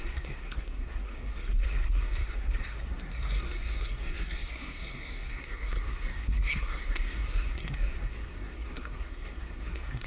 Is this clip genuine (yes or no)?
no